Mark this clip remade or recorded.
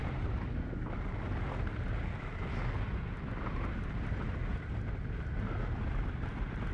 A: recorded